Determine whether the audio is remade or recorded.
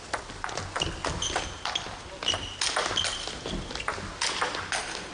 recorded